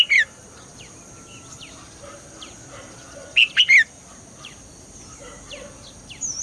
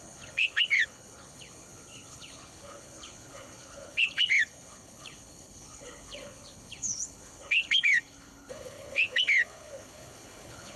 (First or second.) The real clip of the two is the first